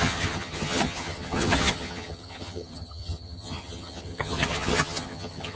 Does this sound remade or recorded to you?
remade